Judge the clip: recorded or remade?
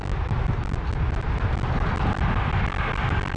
recorded